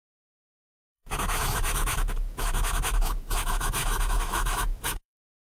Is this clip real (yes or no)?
no